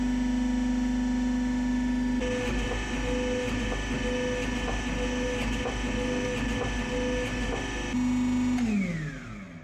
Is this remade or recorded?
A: recorded